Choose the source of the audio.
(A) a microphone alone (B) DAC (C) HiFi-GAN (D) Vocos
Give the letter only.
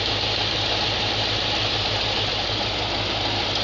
A